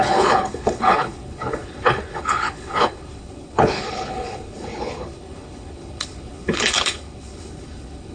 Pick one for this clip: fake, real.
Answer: fake